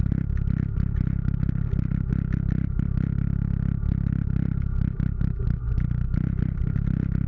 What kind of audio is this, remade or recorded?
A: recorded